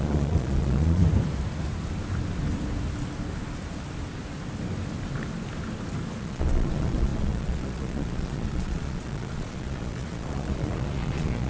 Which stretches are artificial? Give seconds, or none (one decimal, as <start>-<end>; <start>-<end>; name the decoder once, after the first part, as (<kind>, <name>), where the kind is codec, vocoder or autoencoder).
0.0-1.0 (vocoder, Vocos); 6.2-11.5